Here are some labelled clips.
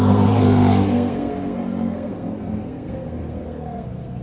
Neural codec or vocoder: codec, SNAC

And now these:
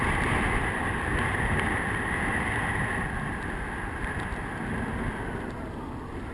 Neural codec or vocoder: none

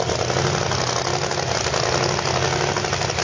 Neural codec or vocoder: none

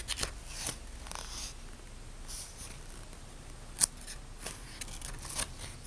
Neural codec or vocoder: none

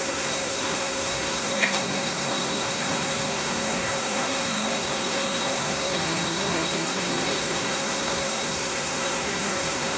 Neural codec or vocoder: codec, SNAC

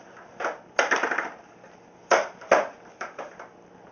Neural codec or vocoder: none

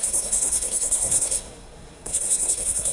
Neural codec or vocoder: codec, SNAC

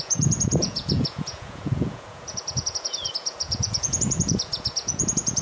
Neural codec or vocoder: vocoder, Vocos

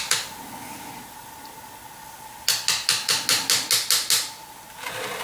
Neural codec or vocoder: none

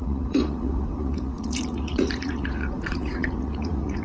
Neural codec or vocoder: vocoder, Vocos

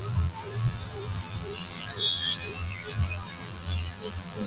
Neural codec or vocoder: vocoder, BigVGAN v2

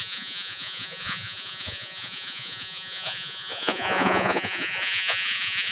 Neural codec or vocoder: vocoder, Vocos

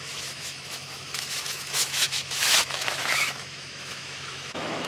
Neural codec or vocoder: autoencoder, DAC-VAE